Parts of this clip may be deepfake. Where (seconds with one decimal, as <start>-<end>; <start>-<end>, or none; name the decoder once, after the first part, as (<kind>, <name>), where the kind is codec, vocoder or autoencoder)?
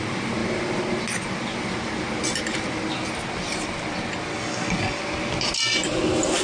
4.3-5.0 (codec, DAC)